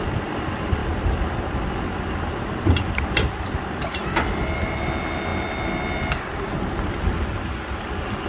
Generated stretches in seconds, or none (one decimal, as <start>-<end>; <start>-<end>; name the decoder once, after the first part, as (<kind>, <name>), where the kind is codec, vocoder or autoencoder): none